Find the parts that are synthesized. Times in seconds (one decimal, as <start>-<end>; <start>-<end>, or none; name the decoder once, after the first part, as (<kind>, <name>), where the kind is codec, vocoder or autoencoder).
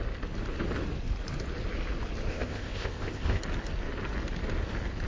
2.3-3.4 (codec, ZipCodec)